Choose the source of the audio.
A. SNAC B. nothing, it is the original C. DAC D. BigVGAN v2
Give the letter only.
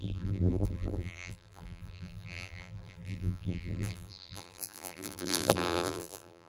D